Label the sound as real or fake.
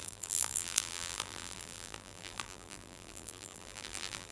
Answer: fake